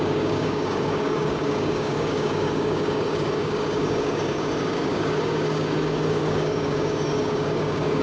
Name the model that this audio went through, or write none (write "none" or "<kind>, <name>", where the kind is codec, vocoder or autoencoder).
codec, DAC